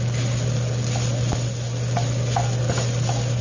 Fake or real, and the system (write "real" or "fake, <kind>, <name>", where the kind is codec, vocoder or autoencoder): real